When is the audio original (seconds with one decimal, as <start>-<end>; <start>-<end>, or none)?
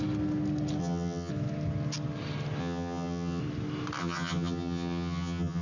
0.0-0.8; 1.3-2.6; 3.4-4.0